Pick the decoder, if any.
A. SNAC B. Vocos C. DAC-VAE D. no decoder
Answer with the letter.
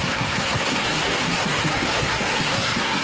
A